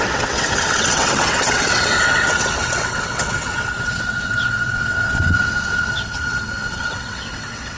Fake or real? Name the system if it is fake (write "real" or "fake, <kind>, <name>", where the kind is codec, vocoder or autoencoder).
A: fake, vocoder, WaveNeXt